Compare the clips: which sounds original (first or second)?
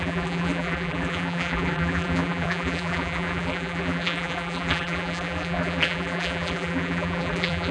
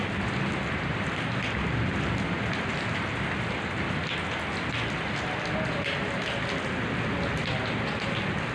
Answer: second